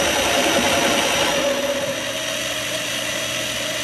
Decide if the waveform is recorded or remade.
recorded